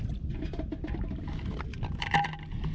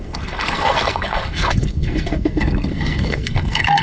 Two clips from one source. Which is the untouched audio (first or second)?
first